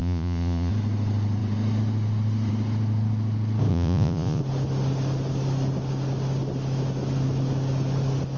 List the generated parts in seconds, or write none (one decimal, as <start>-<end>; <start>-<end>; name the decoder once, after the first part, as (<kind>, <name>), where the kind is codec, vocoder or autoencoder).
0.0-0.7 (vocoder, Vocos); 3.7-4.4